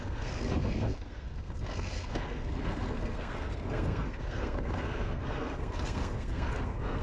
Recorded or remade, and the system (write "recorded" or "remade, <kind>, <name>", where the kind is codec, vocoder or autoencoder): remade, codec, SNAC